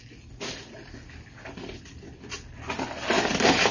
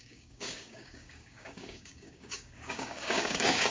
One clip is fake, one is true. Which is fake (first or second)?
second